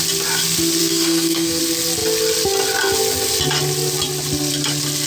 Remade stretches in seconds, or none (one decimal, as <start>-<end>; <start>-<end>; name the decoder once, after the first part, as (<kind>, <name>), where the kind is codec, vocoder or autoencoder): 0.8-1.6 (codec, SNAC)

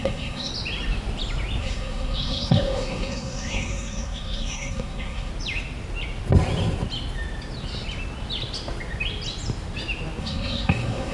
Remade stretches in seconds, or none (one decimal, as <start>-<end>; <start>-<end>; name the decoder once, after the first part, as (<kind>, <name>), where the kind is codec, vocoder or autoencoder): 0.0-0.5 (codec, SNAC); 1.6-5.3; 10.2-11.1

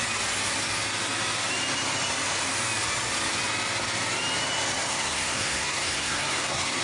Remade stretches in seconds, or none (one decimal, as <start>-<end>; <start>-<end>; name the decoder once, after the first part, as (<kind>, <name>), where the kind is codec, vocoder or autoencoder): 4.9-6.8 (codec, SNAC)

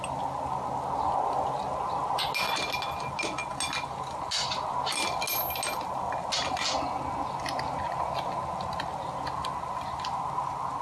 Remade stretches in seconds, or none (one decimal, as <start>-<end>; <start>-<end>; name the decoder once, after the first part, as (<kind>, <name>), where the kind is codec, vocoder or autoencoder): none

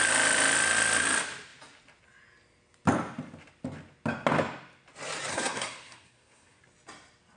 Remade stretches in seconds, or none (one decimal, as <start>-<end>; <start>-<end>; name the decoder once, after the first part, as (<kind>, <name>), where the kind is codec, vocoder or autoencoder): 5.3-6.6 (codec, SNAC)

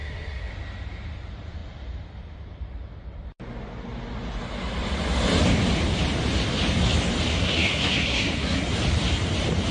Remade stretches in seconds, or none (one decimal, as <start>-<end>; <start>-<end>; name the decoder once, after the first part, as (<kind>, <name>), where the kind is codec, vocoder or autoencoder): 0.0-0.5 (codec, SNAC); 7.3-8.6

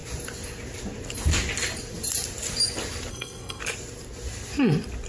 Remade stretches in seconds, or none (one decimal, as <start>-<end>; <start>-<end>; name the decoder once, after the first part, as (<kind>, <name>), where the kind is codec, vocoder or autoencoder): 3.1-3.6 (codec, SNAC)